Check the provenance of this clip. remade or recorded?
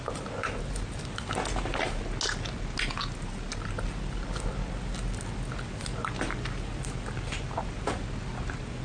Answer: recorded